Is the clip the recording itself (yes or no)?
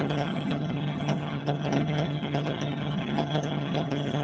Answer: no